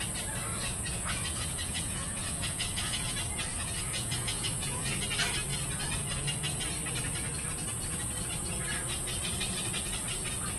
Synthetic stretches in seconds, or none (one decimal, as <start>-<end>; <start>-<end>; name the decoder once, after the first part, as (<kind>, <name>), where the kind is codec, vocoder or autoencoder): 0.5-3.1 (vocoder, Vocos); 3.5-5.0